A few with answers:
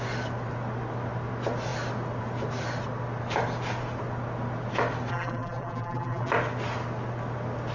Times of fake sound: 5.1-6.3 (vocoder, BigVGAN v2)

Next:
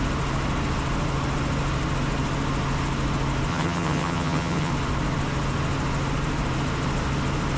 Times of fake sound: 3.5-4.7 (vocoder, HiFi-GAN)

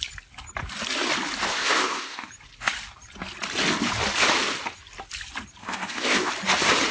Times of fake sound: 1.5-2.3 (codec, ZipCodec); 5.6-6.3

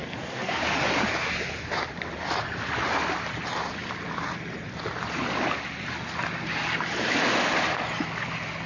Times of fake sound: 0.0-0.6 (codec, SNAC)